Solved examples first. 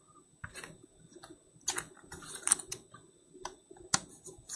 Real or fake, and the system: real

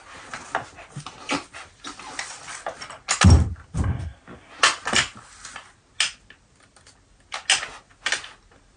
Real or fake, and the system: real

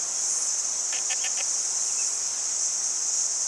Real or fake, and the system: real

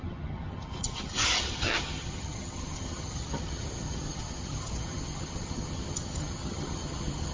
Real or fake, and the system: fake, vocoder, HiFi-GAN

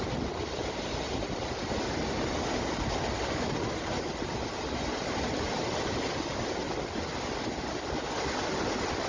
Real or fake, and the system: real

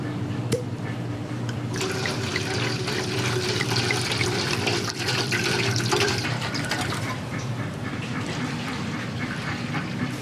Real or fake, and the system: fake, vocoder, BigVGAN v2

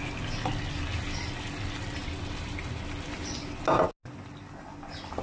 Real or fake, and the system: real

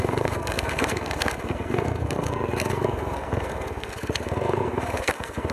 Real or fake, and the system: fake, codec, SNAC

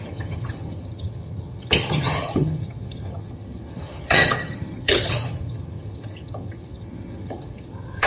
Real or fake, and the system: fake, vocoder, HiFi-GAN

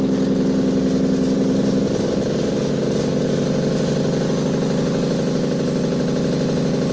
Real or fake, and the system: real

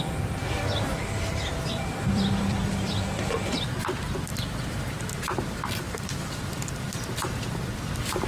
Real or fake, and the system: fake, vocoder, BigVGAN v2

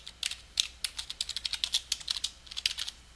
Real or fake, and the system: real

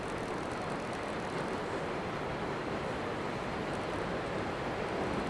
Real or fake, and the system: real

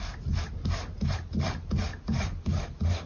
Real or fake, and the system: real